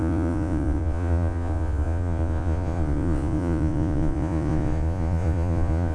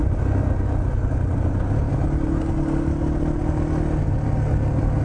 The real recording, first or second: second